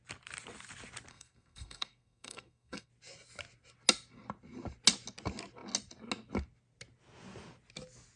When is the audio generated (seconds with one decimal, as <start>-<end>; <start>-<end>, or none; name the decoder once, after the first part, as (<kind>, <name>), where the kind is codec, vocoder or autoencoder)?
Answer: 1.1-2.9 (codec, SNAC)